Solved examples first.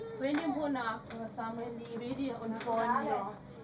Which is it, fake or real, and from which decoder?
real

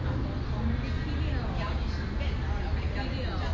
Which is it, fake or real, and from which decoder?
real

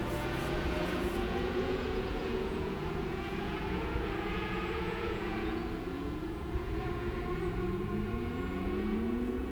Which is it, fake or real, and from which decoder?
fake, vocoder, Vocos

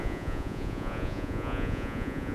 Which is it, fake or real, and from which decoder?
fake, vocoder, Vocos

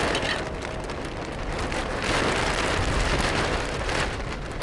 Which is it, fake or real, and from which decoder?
real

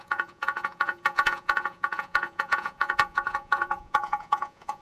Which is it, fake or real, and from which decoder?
fake, vocoder, Vocos